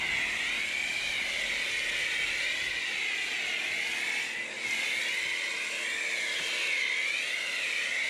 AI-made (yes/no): no